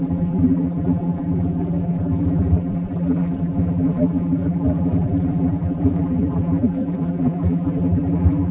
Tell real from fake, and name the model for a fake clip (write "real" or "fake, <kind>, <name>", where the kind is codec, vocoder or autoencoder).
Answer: fake, vocoder, BigVGAN v2